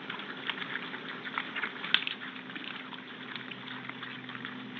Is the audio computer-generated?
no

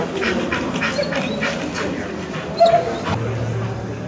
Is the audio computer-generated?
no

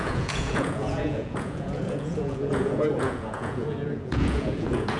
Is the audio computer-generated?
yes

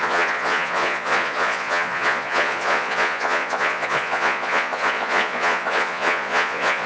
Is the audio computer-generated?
yes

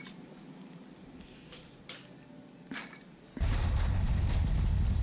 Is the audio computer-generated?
no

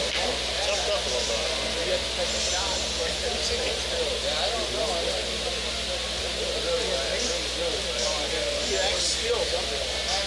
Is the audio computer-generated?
no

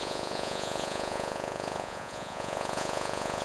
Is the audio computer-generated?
yes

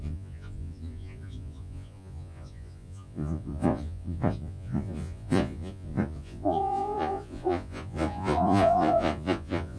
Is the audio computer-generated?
yes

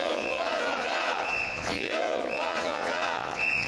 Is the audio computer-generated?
yes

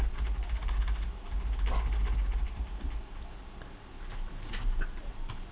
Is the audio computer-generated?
no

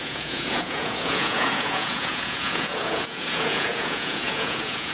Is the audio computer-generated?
yes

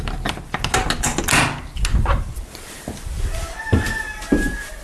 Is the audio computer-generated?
no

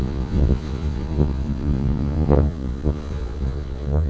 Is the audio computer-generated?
yes